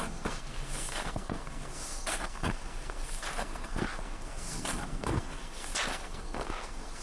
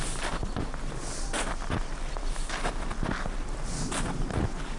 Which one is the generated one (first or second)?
first